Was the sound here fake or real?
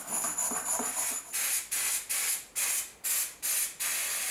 real